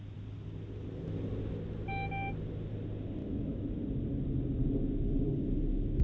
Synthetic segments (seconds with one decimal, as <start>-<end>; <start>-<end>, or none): 3.2-3.8